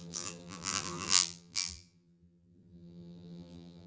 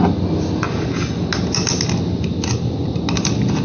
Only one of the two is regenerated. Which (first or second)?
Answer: first